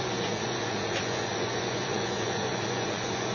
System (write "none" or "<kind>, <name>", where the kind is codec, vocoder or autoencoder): vocoder, Vocos